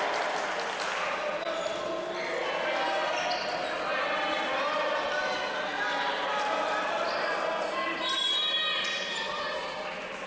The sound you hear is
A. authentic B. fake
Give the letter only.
A